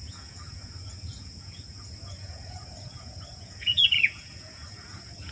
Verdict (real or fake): fake